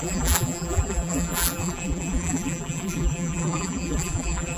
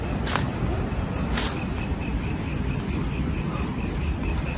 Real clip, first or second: second